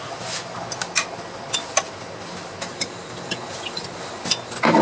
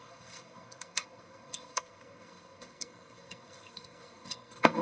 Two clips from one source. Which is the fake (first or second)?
second